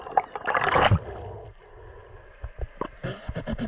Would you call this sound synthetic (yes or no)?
no